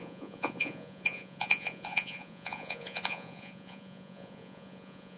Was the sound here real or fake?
fake